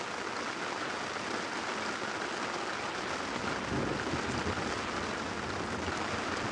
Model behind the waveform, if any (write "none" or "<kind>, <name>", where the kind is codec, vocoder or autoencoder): none